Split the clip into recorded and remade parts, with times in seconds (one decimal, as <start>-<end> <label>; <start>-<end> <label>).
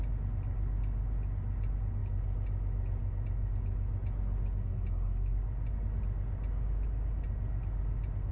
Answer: 0.0-8.3 recorded